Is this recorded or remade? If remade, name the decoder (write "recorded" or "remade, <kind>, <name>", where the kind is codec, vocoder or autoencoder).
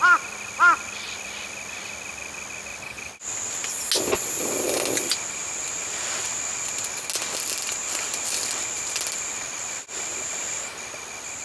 recorded